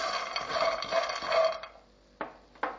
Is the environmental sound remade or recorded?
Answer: recorded